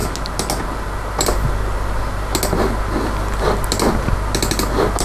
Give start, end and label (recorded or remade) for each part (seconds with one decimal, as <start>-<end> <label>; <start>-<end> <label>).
0.0-5.0 recorded